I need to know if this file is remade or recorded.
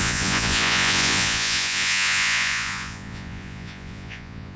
remade